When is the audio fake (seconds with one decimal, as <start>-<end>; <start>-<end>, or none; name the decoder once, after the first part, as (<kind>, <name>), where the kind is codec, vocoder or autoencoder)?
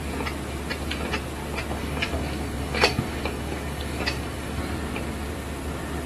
1.7-4.6 (codec, DAC)